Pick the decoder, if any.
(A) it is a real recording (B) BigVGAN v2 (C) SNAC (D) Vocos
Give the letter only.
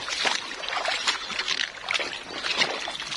A